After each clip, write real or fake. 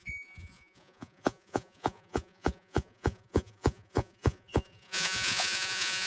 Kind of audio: fake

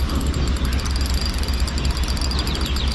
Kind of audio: real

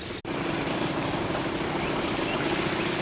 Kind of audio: real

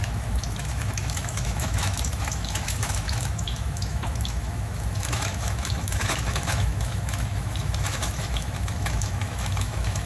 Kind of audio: fake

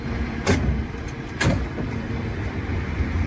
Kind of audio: fake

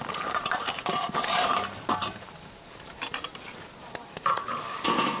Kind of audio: fake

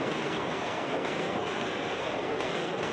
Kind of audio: fake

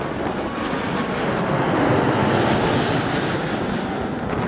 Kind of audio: real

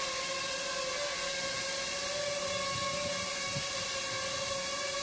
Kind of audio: real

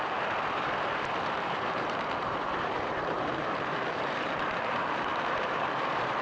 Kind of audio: fake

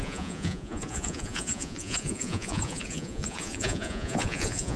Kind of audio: fake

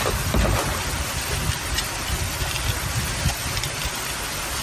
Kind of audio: real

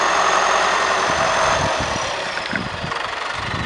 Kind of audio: fake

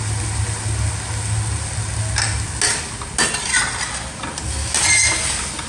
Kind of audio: real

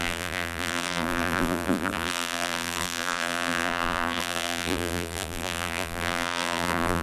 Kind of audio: fake